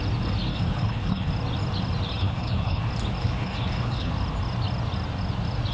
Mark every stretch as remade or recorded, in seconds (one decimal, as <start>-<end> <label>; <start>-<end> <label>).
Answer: 0.0-0.5 recorded; 0.5-1.3 remade; 1.3-2.2 recorded; 2.2-2.8 remade; 2.8-3.2 recorded; 3.2-4.1 remade; 4.1-5.7 recorded